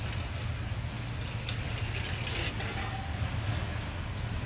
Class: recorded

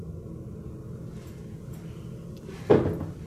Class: recorded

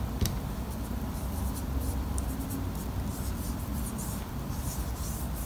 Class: remade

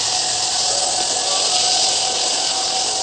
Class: recorded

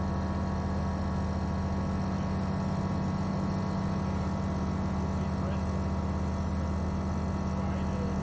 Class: recorded